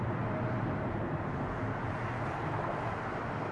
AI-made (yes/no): no